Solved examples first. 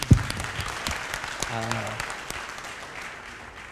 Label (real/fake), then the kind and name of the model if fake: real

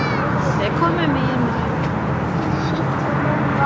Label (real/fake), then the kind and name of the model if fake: real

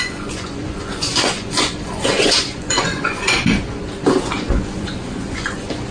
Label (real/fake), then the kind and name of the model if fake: fake, vocoder, Vocos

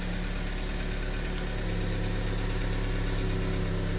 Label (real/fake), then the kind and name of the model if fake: real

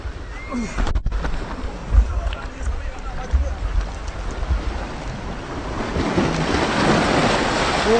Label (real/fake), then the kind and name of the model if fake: real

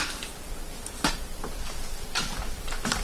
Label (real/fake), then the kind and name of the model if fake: fake, vocoder, BigVGAN v2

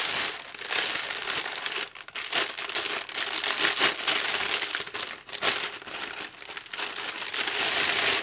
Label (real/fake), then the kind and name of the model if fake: real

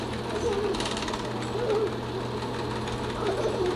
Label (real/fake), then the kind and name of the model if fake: real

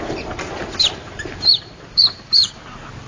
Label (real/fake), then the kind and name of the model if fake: fake, vocoder, BigVGAN v2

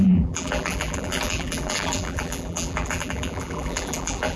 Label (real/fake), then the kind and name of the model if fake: fake, vocoder, BigVGAN v2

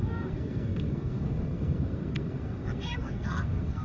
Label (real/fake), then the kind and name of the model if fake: fake, codec, SNAC